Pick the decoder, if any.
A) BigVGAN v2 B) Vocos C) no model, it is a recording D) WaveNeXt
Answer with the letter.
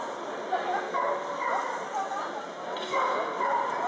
C